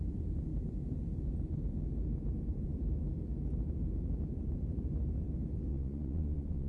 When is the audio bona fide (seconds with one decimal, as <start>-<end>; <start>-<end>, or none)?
0.0-5.7